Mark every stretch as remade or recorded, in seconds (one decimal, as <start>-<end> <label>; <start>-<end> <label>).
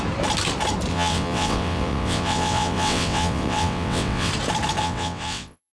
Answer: 0.0-0.9 recorded; 0.9-4.3 remade; 4.3-4.8 recorded; 4.8-5.7 remade